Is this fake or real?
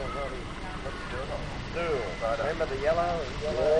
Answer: real